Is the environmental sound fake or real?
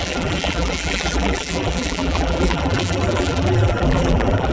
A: fake